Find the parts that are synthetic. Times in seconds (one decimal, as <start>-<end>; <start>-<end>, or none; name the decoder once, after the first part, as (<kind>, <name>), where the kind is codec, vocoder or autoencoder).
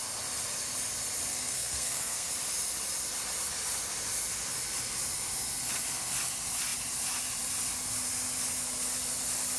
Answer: 1.3-2.3 (codec, SNAC)